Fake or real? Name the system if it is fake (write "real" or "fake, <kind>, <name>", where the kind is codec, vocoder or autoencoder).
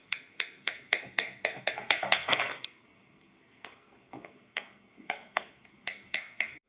fake, codec, SNAC